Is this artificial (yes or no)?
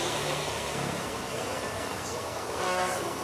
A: yes